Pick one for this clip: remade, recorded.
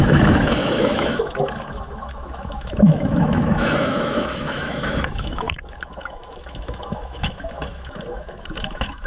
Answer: remade